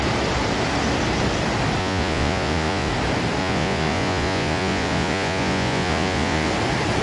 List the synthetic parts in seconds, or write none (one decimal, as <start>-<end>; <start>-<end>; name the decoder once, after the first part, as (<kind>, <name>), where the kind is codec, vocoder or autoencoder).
1.8-2.9 (vocoder, Vocos); 3.4-6.5